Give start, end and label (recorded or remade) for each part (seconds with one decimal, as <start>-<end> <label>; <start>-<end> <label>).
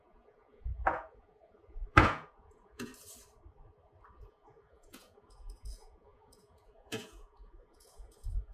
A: 0.0-2.9 remade; 2.9-4.2 recorded; 4.2-8.5 remade